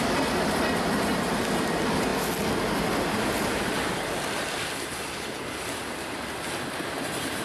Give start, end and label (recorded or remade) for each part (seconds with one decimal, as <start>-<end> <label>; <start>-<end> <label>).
0.0-7.4 recorded